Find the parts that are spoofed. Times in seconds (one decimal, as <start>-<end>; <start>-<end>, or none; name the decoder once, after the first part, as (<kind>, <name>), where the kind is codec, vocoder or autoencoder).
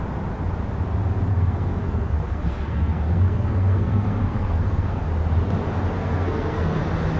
1.3-5.0 (codec, SNAC); 6.0-6.8